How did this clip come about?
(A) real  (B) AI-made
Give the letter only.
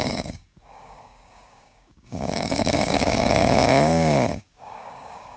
B